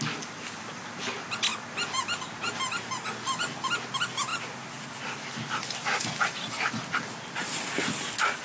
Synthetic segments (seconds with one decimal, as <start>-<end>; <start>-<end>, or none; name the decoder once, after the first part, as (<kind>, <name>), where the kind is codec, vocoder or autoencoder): none